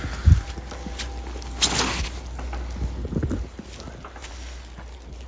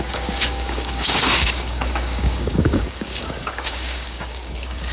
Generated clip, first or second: second